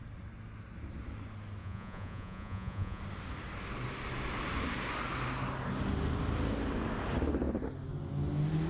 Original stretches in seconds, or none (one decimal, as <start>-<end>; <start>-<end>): 0.0-1.6; 3.0-8.7